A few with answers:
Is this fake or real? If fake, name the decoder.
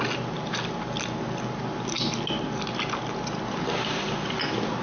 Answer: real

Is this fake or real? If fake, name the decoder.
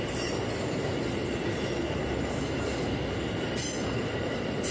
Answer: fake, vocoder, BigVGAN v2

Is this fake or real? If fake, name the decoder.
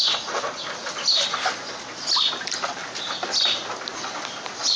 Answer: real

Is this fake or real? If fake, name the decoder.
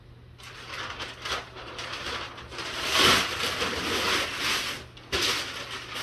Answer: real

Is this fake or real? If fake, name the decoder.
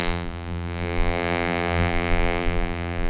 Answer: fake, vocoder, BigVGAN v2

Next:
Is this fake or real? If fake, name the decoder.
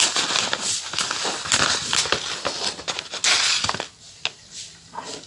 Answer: real